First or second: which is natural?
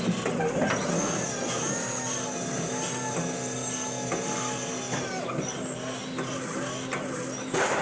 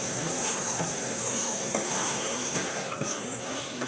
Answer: first